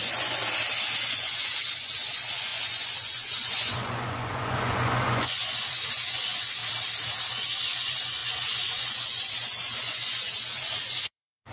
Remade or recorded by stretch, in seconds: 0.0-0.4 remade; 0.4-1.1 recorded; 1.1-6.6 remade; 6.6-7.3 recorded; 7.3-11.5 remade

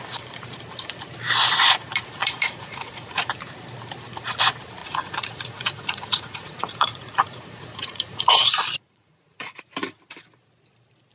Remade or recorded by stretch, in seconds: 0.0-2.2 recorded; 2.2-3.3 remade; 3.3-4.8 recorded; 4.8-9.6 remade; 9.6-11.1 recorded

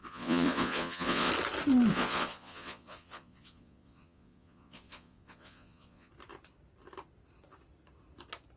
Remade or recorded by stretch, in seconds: 0.0-1.3 remade; 1.3-1.9 recorded; 1.9-6.1 remade; 6.1-8.6 recorded

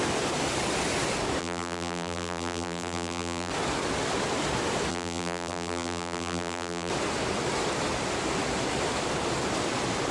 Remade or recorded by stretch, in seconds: 0.0-1.4 recorded; 1.4-3.5 remade; 3.5-4.9 recorded; 4.9-6.9 remade; 6.9-10.1 recorded

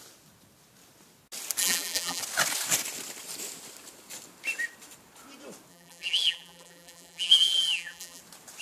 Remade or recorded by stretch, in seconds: 0.0-1.6 recorded; 1.6-2.2 remade; 2.2-5.7 recorded; 5.7-8.2 remade; 8.2-8.6 recorded

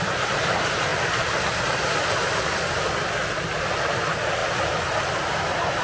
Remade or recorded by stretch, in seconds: 0.0-5.8 recorded

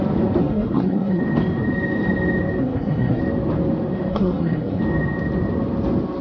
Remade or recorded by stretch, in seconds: 0.0-0.4 recorded; 0.4-1.2 remade; 1.2-2.6 recorded; 2.6-3.2 remade; 3.2-4.1 recorded; 4.1-4.8 remade; 4.8-6.2 recorded

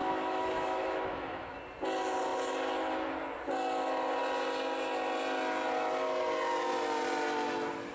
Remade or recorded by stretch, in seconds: 0.0-1.6 remade; 1.6-7.9 recorded